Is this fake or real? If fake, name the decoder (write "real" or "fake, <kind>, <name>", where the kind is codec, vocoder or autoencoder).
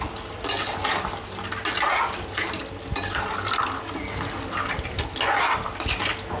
real